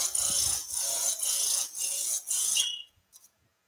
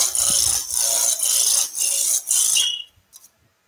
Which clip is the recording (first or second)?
second